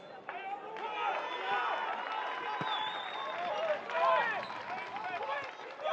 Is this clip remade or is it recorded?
recorded